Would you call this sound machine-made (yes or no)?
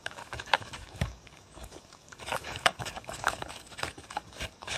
yes